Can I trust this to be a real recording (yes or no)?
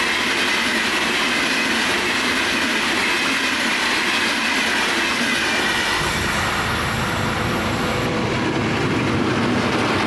yes